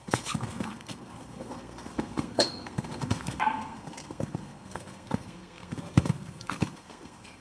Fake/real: fake